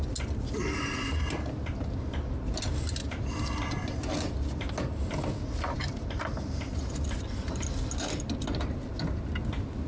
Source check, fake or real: real